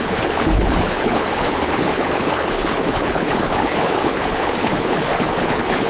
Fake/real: fake